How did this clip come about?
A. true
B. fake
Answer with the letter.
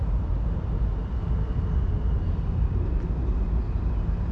A